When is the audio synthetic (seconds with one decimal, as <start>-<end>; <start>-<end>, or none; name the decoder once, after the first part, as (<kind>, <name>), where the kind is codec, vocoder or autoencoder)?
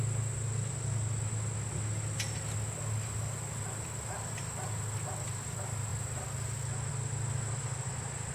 none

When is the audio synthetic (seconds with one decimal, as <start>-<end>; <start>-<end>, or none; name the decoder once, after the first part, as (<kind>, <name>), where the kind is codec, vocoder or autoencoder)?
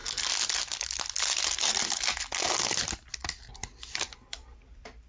none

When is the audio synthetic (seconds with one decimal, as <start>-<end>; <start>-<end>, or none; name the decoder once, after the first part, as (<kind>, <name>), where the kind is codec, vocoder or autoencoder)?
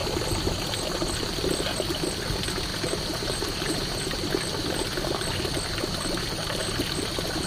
2.7-3.8 (vocoder, BigVGAN v2); 6.6-7.5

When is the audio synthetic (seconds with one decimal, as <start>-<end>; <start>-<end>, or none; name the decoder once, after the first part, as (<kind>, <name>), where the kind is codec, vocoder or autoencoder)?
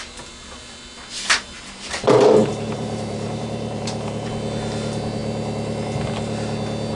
2.4-4.3 (vocoder, BigVGAN v2)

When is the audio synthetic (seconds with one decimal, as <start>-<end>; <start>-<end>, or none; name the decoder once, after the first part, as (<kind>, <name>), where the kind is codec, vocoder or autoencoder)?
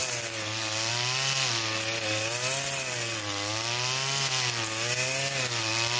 none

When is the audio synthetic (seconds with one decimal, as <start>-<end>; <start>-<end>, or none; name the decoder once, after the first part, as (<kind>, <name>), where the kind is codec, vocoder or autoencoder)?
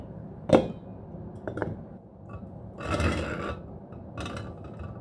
1.6-2.4 (vocoder, BigVGAN v2)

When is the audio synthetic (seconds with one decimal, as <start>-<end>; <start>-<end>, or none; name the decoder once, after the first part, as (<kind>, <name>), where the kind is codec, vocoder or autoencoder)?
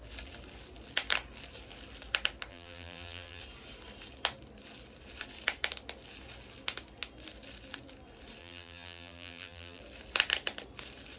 2.5-3.4 (vocoder, BigVGAN v2); 8.4-9.8